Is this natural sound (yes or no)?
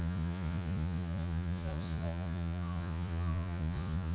no